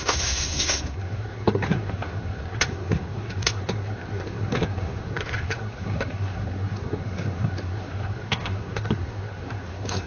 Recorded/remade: remade